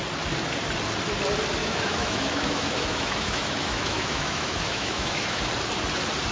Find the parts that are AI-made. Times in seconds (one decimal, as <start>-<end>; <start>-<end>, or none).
1.6-5.4